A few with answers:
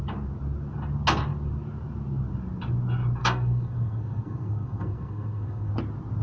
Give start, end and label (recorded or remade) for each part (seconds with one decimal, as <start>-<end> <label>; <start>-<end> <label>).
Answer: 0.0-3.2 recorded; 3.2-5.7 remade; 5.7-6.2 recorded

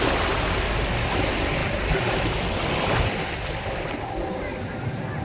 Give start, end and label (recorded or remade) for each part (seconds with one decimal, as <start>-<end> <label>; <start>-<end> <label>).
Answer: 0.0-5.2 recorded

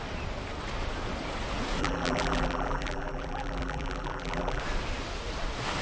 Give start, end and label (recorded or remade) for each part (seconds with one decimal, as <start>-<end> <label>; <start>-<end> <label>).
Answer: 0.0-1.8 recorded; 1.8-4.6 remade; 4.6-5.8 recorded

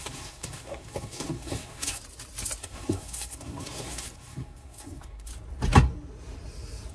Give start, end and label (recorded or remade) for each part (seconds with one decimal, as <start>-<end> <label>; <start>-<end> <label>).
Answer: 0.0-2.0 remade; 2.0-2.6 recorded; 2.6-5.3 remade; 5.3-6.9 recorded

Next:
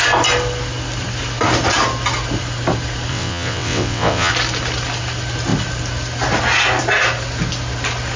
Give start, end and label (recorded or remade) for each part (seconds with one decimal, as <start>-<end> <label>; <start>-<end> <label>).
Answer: 0.0-3.1 recorded; 3.1-4.3 remade; 4.3-8.2 recorded

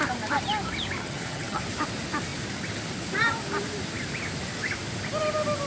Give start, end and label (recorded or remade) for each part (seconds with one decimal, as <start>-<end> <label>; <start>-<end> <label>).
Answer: 0.0-1.0 recorded; 1.0-1.6 remade; 1.6-5.7 recorded

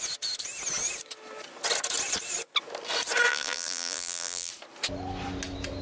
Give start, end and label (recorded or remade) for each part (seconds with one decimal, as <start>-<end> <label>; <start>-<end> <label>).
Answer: 0.0-3.3 recorded; 3.3-4.5 remade; 4.5-5.8 recorded

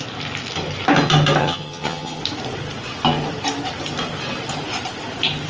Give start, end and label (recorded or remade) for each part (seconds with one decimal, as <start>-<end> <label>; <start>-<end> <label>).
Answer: 0.0-1.4 recorded; 1.4-2.2 remade; 2.2-5.5 recorded